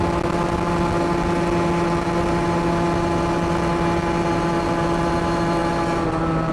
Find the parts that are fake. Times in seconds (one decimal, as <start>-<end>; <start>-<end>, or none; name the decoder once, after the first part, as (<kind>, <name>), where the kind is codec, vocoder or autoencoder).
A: none